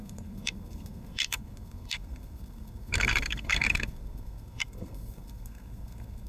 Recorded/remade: remade